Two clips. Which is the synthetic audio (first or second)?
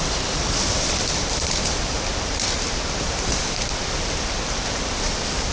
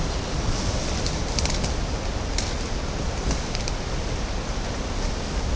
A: first